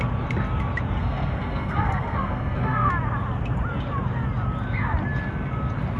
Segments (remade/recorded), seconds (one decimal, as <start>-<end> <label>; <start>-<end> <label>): 0.0-1.0 recorded; 1.0-2.9 remade; 2.9-6.0 recorded